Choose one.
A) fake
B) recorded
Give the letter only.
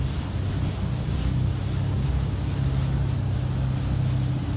B